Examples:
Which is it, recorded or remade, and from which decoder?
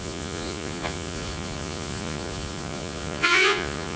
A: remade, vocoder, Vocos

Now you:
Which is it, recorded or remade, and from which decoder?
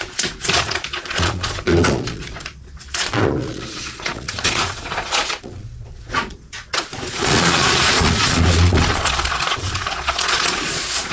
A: remade, vocoder, Vocos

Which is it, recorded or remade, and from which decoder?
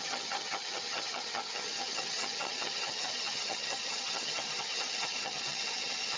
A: remade, vocoder, HiFi-GAN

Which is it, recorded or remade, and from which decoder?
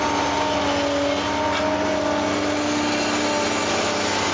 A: recorded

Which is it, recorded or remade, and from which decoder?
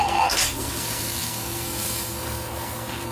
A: remade, codec, SNAC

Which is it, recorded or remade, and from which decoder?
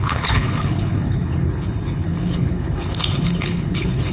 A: remade, codec, HILCodec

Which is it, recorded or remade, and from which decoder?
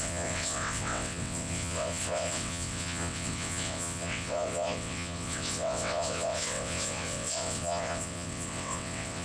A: remade, vocoder, WaveNeXt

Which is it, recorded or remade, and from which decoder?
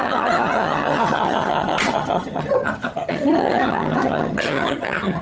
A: remade, vocoder, HiFi-GAN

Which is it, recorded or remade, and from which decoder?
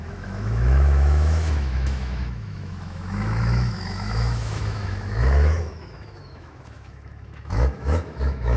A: remade, autoencoder, DAC-VAE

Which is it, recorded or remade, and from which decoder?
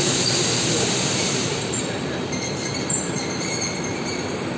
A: remade, vocoder, BigVGAN v2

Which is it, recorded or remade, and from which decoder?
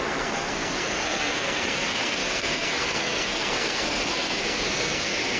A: remade, codec, SNAC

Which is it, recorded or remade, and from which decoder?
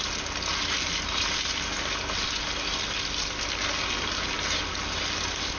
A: recorded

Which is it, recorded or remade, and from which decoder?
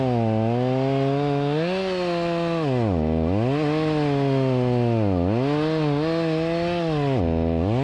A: recorded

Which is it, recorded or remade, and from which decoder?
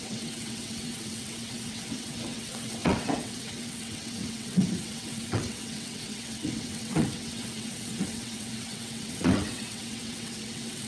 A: remade, vocoder, WaveNeXt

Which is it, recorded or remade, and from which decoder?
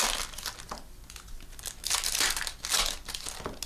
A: recorded